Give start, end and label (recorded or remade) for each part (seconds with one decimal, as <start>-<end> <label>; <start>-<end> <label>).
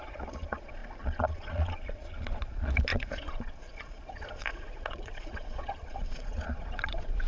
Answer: 0.0-7.3 remade